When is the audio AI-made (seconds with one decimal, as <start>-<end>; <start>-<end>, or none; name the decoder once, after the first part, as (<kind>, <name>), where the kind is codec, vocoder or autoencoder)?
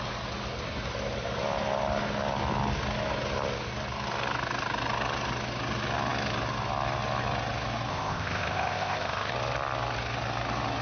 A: 7.9-9.3 (codec, ZipCodec)